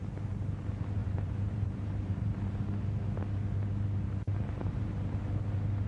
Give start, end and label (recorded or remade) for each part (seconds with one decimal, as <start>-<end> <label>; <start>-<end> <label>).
0.0-1.0 recorded; 1.0-2.6 remade; 2.6-4.6 recorded; 4.6-5.2 remade; 5.2-5.9 recorded